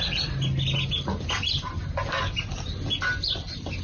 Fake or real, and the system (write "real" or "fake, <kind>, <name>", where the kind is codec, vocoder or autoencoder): real